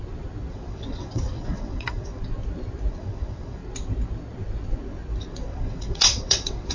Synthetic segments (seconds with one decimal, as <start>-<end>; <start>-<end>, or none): 0.5-2.2; 2.9-3.6; 5.3-6.7

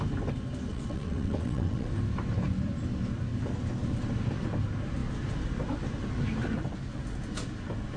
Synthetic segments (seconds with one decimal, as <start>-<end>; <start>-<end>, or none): 0.7-1.9

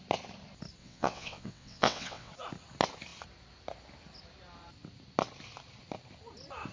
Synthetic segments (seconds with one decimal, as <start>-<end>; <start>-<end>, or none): 0.8-2.3

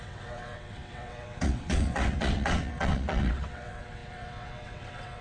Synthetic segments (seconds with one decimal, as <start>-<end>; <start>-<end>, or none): 0.0-5.2

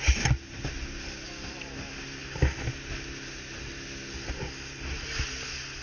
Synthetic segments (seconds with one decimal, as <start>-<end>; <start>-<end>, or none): none

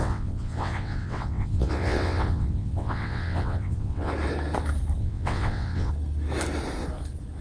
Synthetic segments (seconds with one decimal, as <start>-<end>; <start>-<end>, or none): 0.0-4.1; 5.0-5.9